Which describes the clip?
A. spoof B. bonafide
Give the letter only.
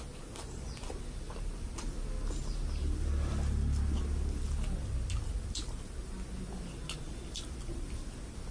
B